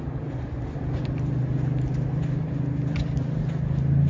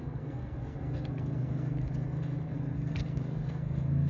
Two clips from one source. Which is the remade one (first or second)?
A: second